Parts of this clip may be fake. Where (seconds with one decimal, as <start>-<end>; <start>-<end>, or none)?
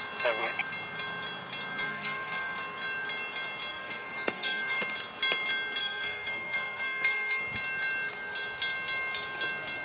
1.7-2.6; 3.7-4.8; 5.8-7.4